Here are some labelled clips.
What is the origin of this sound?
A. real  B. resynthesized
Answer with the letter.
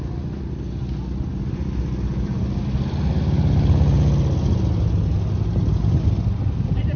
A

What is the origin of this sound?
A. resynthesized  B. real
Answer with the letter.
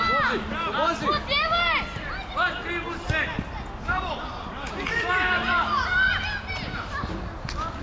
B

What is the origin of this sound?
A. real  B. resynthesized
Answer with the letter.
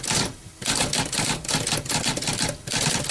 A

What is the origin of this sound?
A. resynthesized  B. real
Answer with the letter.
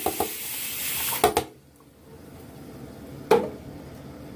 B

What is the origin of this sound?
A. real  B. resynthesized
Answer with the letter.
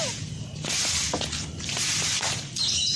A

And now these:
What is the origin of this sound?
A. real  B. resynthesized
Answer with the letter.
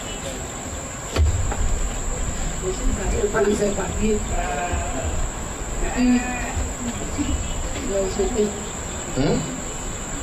A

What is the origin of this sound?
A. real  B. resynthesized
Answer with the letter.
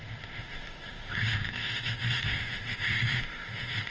B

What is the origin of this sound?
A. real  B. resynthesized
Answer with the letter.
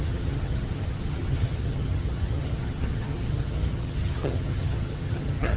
B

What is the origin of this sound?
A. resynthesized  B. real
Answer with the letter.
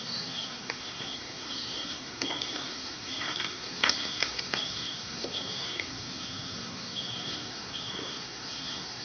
A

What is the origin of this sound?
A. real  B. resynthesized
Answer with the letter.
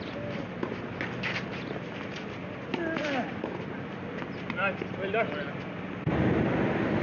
A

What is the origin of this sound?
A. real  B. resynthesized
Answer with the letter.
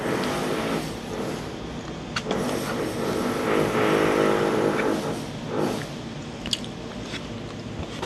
A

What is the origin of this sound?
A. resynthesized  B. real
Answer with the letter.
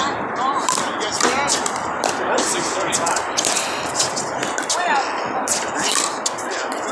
B